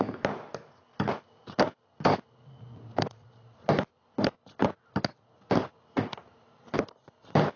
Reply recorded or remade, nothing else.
recorded